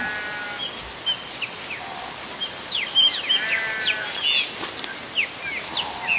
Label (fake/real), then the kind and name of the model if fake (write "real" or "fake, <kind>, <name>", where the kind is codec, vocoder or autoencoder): real